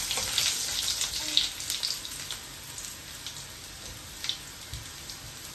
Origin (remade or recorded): recorded